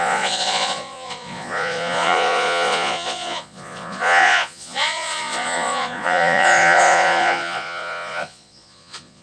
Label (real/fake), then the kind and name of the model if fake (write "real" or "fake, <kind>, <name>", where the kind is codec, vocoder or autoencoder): fake, vocoder, Vocos